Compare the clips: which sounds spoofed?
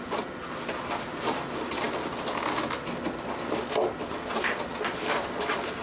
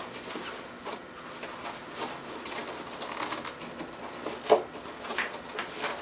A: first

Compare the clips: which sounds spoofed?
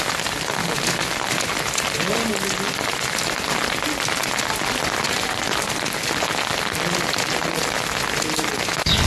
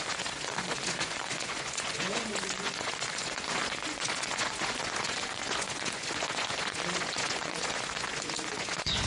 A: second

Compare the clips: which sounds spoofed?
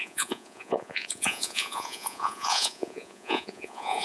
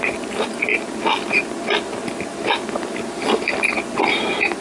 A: first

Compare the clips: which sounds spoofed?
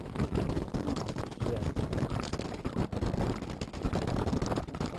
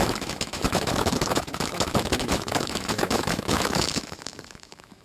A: second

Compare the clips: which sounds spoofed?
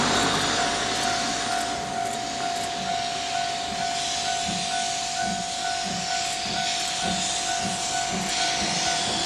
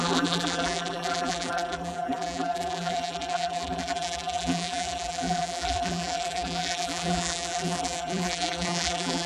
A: second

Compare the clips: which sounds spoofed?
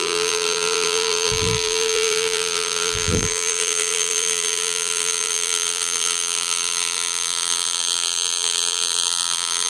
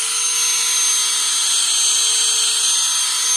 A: first